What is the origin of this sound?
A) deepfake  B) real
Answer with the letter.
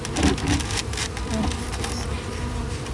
B